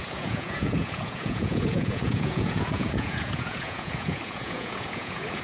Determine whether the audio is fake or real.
fake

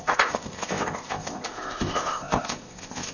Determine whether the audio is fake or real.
fake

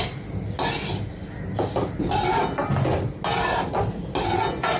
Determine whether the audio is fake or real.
real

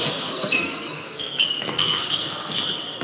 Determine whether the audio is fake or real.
fake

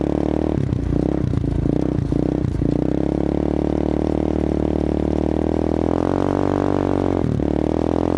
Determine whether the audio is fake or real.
real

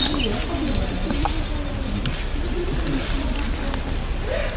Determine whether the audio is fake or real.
real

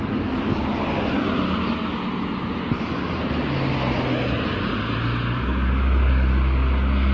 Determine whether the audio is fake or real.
real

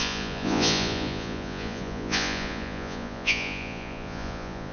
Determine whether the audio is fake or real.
fake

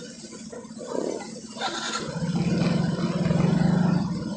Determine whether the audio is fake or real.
real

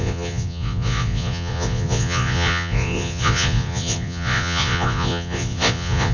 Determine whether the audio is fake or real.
fake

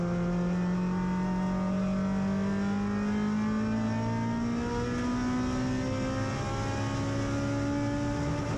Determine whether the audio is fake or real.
real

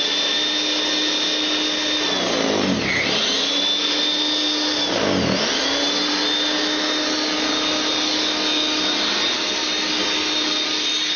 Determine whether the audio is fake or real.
real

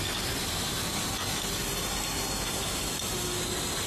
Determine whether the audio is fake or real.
real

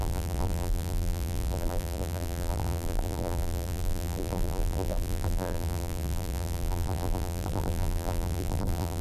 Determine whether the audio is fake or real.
fake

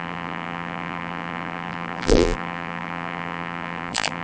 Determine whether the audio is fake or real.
fake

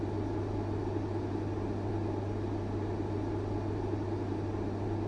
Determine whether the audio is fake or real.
real